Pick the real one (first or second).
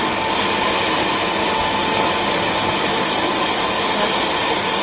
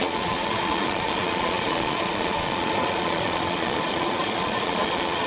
first